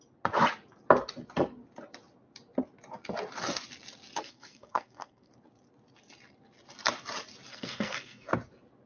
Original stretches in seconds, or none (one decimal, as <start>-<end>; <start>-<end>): 0.0-4.2; 5.3-7.5; 8.3-8.9